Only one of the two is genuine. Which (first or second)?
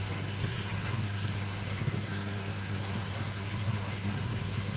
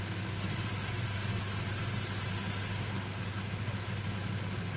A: second